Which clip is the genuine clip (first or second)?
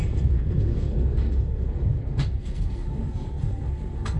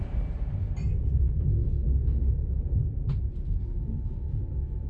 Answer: second